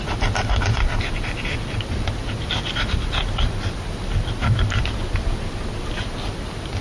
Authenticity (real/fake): real